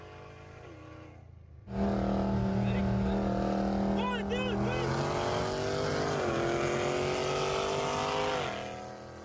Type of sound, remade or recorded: recorded